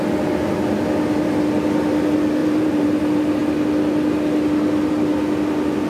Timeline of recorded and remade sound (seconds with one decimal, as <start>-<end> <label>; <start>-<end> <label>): 0.0-2.4 recorded; 2.4-3.0 remade; 3.0-5.9 recorded